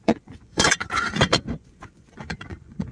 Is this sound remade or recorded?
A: remade